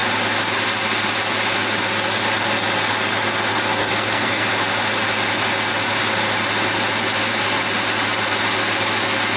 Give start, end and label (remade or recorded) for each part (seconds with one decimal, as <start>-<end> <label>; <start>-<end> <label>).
0.0-3.8 recorded; 3.8-4.5 remade; 4.5-9.4 recorded